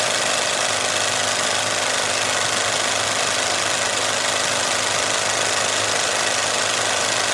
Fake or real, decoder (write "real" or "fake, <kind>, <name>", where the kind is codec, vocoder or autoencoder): real